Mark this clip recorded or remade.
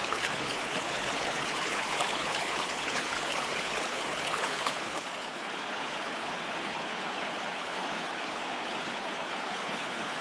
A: remade